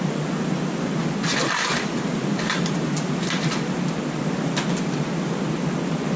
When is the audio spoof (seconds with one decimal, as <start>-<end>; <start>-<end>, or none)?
1.3-3.7